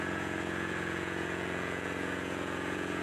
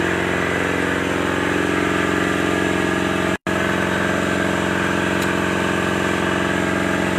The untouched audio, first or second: second